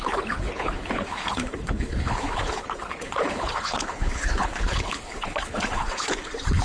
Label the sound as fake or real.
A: fake